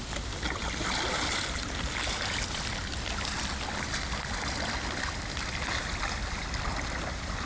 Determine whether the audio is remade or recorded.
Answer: recorded